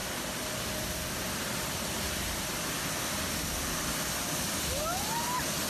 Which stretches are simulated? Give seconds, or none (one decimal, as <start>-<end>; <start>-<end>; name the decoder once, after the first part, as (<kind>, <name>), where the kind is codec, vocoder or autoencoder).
none